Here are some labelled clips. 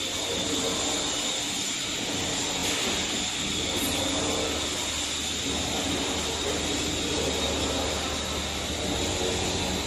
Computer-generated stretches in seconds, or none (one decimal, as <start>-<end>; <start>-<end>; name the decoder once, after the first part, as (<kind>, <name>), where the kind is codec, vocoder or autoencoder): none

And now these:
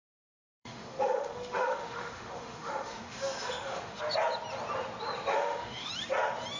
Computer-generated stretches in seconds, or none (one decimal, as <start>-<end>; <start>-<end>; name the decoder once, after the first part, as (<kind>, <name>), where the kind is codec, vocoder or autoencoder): 0.0-4.0 (autoencoder, DAC-VAE); 5.3-5.9

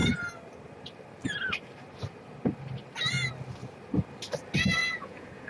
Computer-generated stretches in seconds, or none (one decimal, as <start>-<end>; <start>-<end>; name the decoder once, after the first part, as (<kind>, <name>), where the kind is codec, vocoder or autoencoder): 4.8-5.5 (vocoder, Vocos)

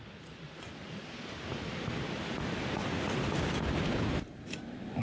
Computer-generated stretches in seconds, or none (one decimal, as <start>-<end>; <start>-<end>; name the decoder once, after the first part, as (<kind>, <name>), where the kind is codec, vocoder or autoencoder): 2.8-3.5 (vocoder, BigVGAN v2)

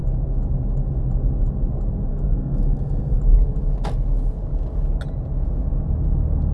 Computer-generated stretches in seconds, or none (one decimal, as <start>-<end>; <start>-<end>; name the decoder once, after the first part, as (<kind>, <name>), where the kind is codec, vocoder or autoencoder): 2.1-3.2 (codec, SNAC)

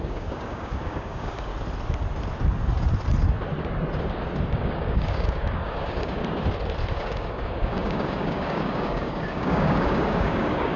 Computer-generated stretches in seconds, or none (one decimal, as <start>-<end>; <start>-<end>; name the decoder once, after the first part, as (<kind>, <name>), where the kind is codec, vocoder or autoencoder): 0.0-1.5 (codec, DAC); 4.5-6.2; 6.9-10.8